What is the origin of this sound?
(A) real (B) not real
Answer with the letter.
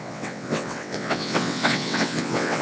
B